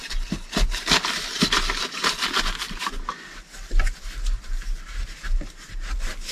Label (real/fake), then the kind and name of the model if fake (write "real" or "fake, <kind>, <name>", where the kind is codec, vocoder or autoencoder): fake, vocoder, BigVGAN v2